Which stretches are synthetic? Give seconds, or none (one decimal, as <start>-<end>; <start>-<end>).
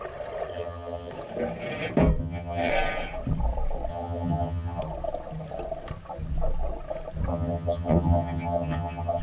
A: 0.5-1.1; 2.2-2.7; 3.9-4.8; 7.3-9.2